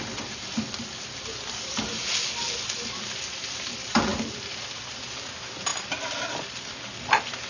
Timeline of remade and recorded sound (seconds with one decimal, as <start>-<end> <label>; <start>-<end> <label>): 0.0-4.1 recorded; 4.1-5.0 remade; 5.0-7.5 recorded